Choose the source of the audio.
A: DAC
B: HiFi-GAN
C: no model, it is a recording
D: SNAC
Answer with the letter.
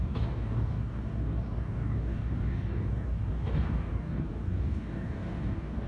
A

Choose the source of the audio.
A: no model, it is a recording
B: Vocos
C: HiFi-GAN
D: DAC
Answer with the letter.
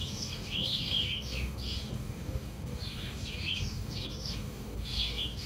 D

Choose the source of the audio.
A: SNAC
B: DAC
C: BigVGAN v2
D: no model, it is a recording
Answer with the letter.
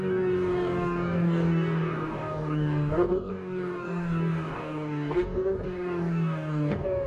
B